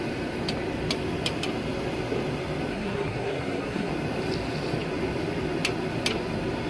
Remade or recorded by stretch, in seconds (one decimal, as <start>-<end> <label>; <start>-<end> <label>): 0.0-2.7 recorded; 2.7-3.9 remade; 3.9-6.7 recorded